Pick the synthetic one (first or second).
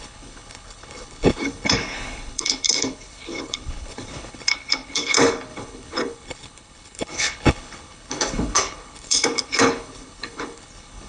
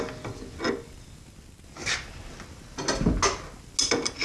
first